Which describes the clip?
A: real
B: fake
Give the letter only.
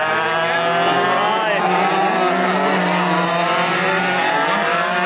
A